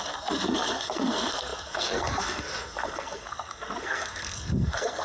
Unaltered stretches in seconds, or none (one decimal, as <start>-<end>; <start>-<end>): none